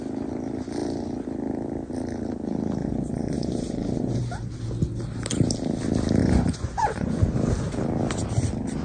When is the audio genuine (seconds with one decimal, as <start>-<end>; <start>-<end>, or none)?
0.0-2.8; 4.2-6.2; 7.2-8.8